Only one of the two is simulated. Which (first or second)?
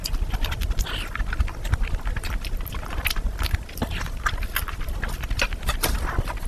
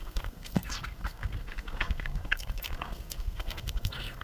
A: second